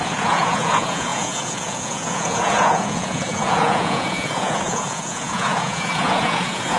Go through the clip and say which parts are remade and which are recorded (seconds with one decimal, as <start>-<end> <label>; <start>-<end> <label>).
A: 0.0-6.8 remade